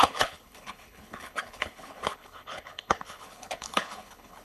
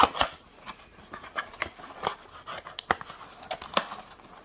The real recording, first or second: second